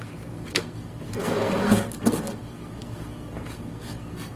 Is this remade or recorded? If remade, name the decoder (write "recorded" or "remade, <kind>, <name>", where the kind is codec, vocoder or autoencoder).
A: remade, codec, SNAC